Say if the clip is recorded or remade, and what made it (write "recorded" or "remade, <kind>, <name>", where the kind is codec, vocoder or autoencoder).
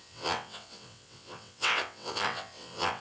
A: remade, vocoder, WaveNeXt